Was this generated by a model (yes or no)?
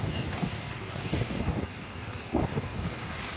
yes